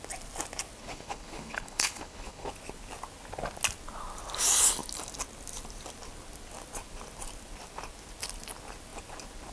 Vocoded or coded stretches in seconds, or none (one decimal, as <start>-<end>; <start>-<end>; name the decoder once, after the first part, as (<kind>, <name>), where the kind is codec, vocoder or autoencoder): 0.8-2.5 (codec, HILCodec)